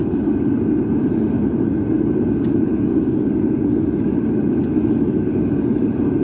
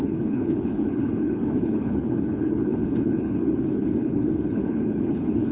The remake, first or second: second